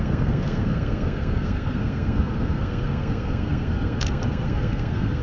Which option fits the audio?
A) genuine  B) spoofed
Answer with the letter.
B